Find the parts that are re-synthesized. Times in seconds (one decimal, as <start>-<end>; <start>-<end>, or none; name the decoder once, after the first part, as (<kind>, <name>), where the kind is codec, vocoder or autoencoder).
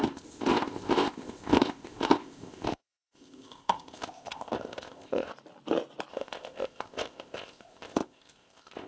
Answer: 0.0-5.3 (codec, ZipCodec); 6.1-8.9